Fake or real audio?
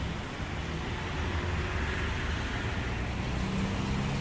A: real